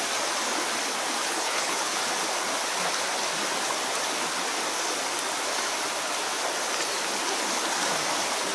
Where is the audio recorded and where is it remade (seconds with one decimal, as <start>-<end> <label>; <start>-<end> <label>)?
0.0-1.2 recorded; 1.2-2.0 remade; 2.0-8.5 recorded